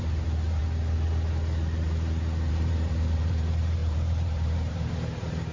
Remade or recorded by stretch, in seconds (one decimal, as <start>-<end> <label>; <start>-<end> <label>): 0.0-0.6 remade; 0.6-2.5 recorded; 2.5-5.5 remade